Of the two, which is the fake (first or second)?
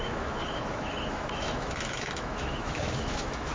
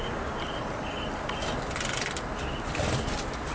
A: first